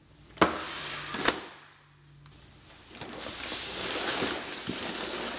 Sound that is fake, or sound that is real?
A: real